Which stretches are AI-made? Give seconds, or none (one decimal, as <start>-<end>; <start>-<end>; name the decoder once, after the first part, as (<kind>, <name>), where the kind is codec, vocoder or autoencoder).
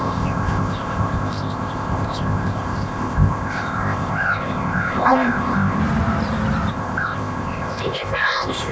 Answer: 0.0-5.8 (codec, ZipCodec); 6.7-8.7